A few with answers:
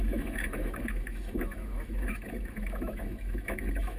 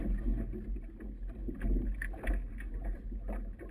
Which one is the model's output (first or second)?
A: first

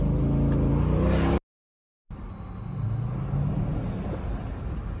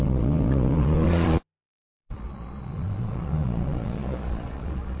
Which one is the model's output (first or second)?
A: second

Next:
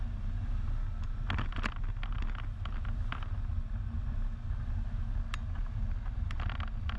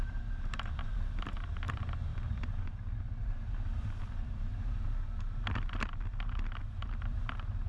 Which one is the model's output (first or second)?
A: second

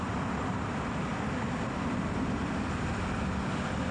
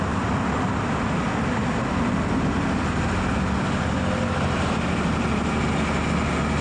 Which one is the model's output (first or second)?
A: first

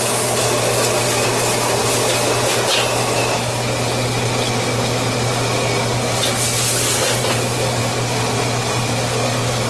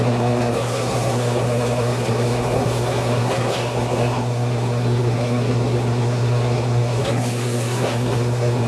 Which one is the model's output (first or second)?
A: second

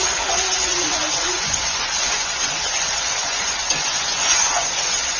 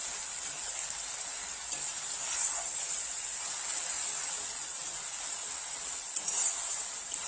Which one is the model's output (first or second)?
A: first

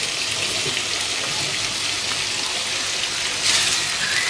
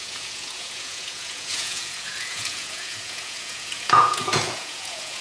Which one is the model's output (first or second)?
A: second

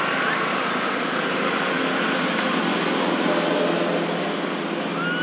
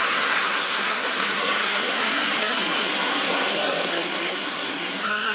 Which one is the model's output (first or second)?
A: second